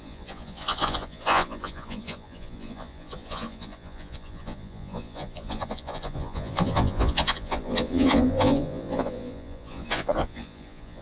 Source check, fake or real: fake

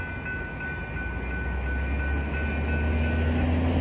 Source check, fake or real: real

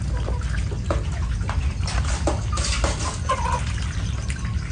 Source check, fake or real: real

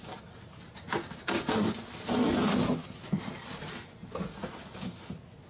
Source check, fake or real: real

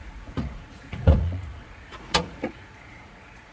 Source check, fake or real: fake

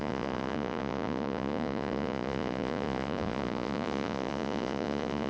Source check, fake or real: fake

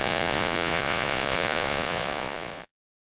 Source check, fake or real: fake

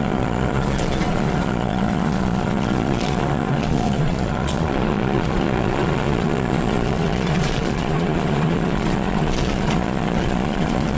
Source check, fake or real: fake